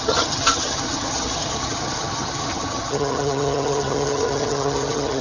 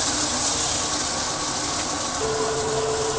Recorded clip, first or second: second